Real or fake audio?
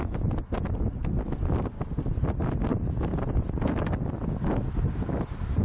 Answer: real